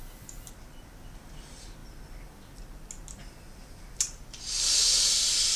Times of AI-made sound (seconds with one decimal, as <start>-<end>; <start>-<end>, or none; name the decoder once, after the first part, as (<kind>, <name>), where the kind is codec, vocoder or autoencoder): none